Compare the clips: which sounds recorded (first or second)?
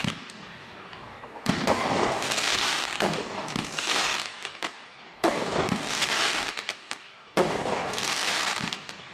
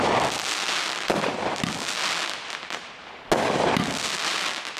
second